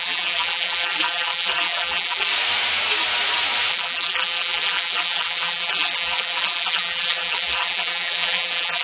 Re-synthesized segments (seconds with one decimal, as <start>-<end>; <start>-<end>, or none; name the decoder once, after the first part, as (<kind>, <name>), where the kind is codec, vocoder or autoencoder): 0.0-2.3 (vocoder, BigVGAN v2); 3.7-8.8